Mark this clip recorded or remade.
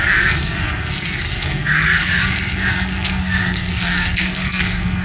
remade